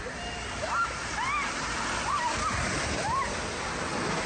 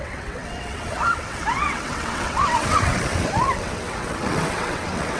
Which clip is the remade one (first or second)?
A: second